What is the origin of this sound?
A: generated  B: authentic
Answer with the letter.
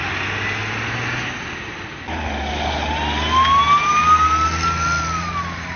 B